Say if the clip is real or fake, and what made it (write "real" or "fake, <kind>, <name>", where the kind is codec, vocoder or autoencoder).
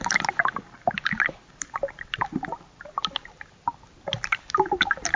real